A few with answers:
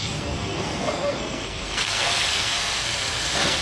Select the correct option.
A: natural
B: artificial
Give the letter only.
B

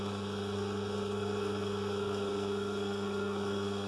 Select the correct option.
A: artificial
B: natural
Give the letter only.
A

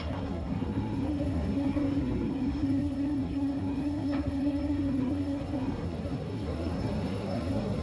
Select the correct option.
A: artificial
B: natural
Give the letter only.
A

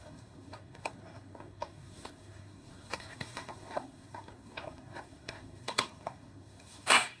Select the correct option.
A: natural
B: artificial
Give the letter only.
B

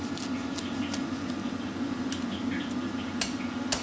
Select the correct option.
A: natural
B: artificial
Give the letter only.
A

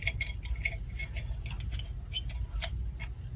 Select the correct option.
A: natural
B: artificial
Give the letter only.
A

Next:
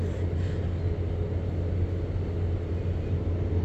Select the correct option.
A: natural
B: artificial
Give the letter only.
A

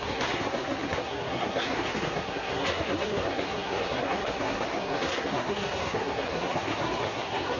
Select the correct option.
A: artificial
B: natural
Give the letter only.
A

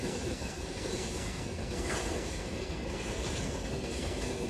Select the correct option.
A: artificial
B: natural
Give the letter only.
A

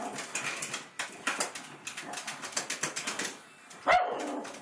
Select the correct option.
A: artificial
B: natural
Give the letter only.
B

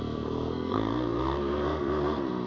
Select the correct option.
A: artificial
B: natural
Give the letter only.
A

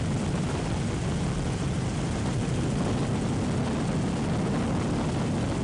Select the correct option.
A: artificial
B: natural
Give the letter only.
B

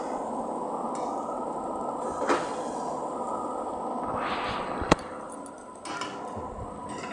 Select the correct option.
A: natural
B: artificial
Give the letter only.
A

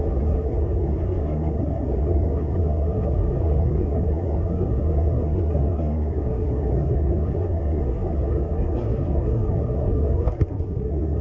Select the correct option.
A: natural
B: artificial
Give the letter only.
B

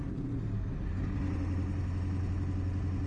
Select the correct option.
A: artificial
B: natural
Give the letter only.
B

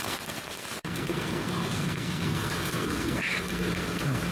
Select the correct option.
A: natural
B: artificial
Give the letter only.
B